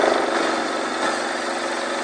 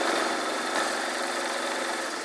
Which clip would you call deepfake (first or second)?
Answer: second